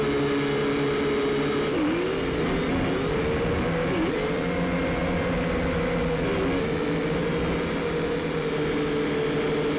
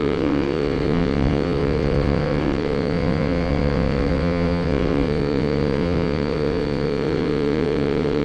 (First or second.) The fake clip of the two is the second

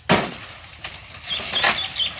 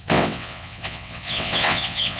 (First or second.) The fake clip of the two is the second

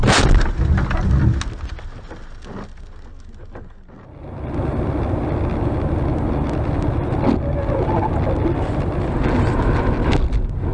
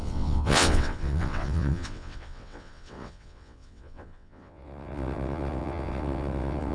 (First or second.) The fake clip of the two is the second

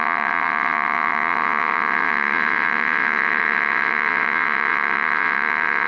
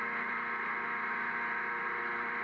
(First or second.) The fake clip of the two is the first